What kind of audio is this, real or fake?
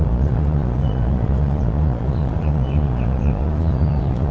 fake